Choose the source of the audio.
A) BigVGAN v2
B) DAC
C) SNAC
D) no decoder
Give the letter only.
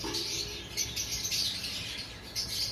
D